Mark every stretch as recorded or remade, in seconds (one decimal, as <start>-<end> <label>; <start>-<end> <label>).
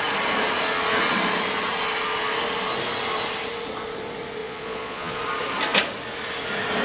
0.0-4.4 recorded; 4.4-5.2 remade; 5.2-6.8 recorded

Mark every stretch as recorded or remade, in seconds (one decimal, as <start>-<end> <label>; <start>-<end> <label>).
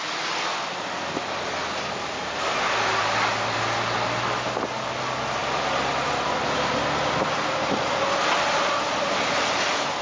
0.0-10.0 recorded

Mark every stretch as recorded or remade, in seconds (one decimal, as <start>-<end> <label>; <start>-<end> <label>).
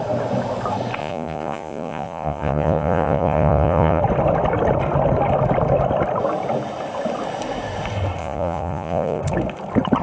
0.0-1.0 recorded; 1.0-4.0 remade; 4.0-8.2 recorded; 8.2-9.2 remade; 9.2-10.0 recorded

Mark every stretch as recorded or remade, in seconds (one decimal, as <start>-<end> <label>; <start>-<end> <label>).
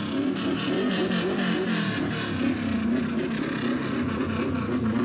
0.0-5.0 recorded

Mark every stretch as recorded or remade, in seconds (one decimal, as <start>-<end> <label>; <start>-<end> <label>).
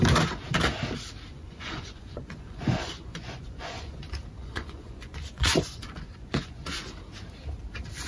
0.0-1.3 recorded; 1.3-4.0 remade; 4.0-4.4 recorded; 4.4-6.9 remade; 6.9-8.1 recorded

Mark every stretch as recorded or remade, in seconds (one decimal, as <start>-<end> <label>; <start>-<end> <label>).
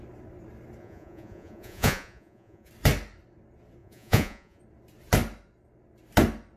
0.0-0.8 recorded; 0.8-2.7 remade; 2.7-3.8 recorded; 3.8-4.6 remade; 4.6-6.6 recorded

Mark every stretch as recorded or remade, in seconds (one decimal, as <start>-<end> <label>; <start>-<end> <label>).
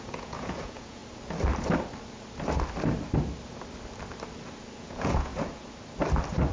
0.0-1.0 remade; 1.0-4.8 recorded; 4.8-5.3 remade; 5.3-6.5 recorded